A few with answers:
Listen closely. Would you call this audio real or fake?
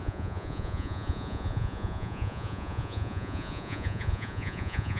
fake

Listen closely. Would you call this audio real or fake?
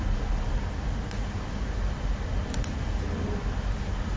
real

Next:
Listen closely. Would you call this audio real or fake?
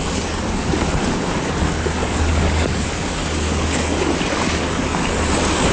fake